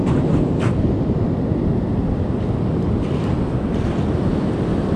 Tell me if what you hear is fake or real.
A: real